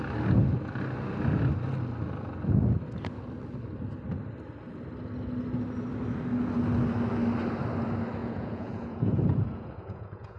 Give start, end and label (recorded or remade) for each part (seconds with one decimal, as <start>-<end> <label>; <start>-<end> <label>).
0.0-8.2 recorded; 8.2-10.4 remade